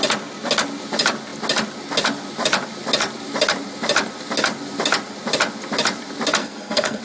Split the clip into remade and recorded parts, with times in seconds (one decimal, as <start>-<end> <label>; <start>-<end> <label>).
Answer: 0.0-6.4 recorded; 6.4-7.0 remade